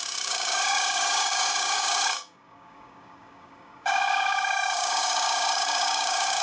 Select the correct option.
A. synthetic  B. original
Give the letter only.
A